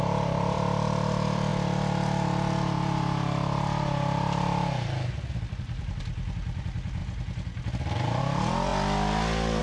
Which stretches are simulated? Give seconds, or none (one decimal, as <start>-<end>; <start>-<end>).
0.0-1.5; 5.3-7.0; 8.2-8.7